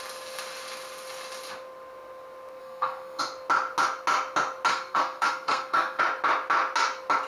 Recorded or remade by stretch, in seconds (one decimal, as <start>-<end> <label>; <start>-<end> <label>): 0.0-2.6 recorded; 2.6-3.2 remade; 3.2-4.7 recorded; 4.7-6.0 remade; 6.0-7.3 recorded